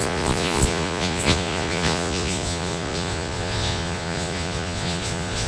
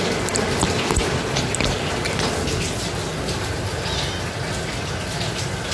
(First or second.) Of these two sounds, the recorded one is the second